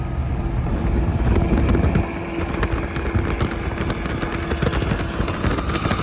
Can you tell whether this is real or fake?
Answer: real